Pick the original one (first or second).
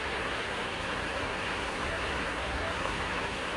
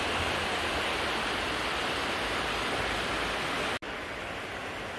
second